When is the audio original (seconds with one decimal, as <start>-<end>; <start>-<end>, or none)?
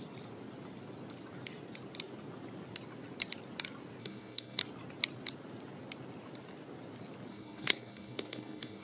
0.0-4.0; 4.6-7.3